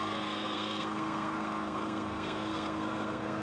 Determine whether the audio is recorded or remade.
remade